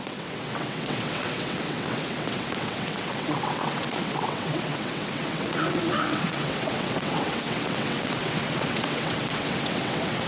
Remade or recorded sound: remade